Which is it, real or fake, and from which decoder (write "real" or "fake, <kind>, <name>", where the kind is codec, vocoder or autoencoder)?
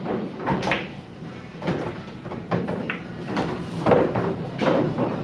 fake, vocoder, BigVGAN v2